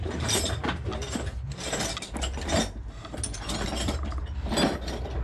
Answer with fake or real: real